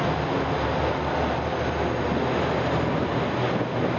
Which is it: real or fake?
real